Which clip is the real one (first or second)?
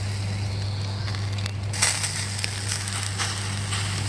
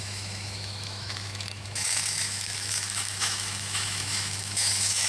first